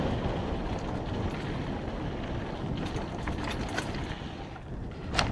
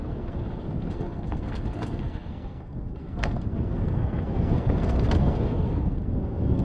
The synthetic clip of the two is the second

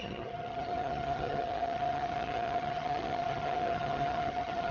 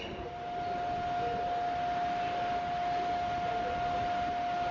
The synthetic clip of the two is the first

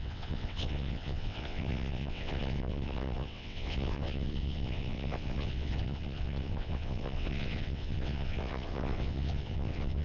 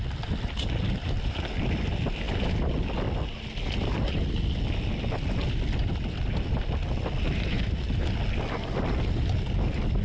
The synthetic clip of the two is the first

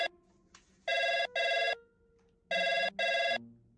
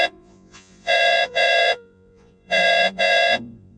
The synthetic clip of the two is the second